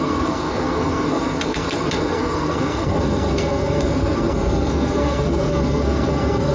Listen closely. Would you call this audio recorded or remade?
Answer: remade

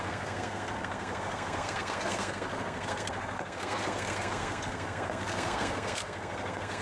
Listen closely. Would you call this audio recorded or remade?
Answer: remade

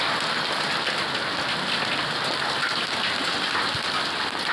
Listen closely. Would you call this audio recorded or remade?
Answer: recorded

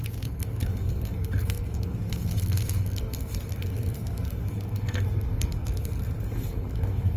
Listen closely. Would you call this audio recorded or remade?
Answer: remade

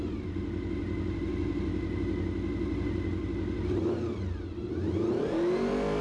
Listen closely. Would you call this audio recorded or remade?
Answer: recorded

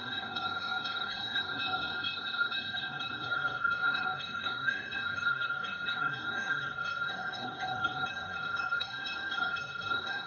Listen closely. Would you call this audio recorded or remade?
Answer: remade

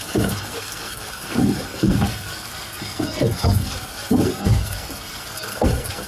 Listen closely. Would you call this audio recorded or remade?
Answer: remade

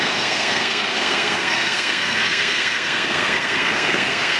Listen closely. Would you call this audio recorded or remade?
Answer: remade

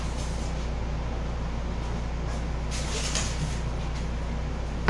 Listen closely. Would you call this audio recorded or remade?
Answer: recorded